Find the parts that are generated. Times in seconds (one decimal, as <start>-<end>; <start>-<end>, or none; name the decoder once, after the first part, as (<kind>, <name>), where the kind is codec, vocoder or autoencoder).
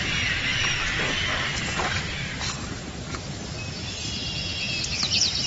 none